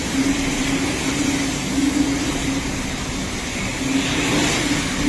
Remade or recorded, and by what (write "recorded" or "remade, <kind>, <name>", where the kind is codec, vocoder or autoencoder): recorded